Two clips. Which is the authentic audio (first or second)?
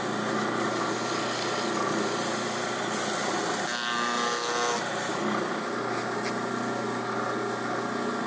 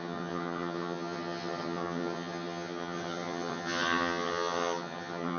first